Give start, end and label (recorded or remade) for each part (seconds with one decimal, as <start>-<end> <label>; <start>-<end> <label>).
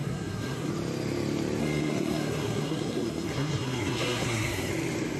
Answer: 0.0-0.7 remade; 0.7-1.6 recorded; 1.6-4.7 remade; 4.7-5.2 recorded